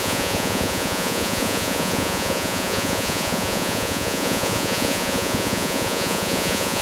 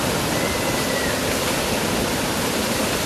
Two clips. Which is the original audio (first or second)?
second